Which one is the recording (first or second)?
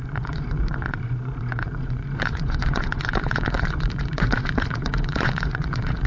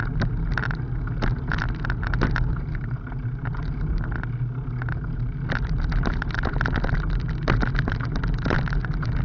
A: second